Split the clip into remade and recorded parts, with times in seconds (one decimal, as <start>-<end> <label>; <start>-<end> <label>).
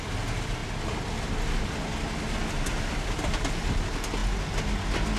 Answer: 0.0-5.2 recorded